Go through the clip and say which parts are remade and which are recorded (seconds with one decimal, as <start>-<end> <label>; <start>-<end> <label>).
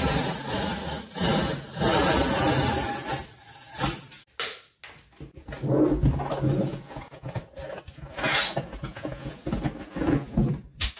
0.0-6.7 recorded; 6.7-7.4 remade; 7.4-8.9 recorded; 8.9-9.4 remade; 9.4-11.0 recorded